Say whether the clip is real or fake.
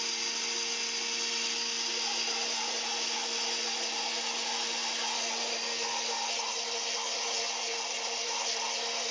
real